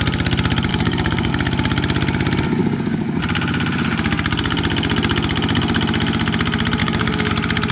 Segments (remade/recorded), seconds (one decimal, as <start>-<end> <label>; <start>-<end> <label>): 0.0-0.7 recorded; 0.7-1.3 remade; 1.3-2.6 recorded; 2.6-3.2 remade; 3.2-6.8 recorded; 6.8-7.3 remade; 7.3-7.7 recorded